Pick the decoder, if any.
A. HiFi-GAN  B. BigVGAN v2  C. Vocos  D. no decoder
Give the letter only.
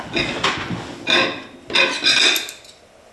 D